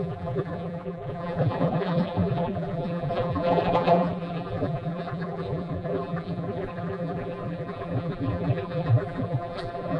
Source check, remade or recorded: remade